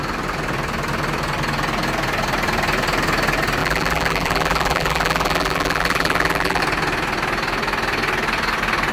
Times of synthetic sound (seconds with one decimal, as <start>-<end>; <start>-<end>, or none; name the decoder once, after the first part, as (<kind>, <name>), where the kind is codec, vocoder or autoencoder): 3.6-6.6 (vocoder, BigVGAN v2)